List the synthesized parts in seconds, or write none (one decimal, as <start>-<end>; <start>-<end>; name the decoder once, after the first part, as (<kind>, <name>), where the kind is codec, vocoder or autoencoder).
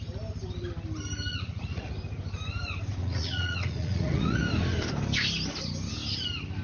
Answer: 1.3-1.9 (vocoder, Vocos); 3.0-4.4